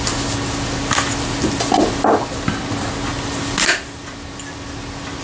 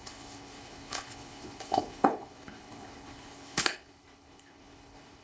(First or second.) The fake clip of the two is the second